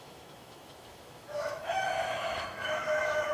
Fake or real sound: fake